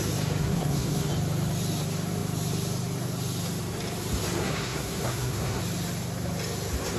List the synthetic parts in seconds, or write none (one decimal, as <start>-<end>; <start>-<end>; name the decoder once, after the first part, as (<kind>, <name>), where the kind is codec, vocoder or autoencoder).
0.4-1.1 (codec, SNAC); 4.4-5.6